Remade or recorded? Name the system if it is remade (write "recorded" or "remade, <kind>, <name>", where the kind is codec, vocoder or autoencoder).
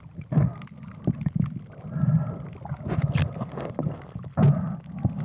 recorded